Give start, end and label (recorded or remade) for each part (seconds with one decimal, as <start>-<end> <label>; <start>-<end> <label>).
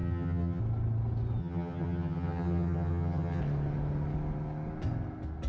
0.0-0.6 remade; 0.6-1.4 recorded; 1.4-3.4 remade; 3.4-5.5 recorded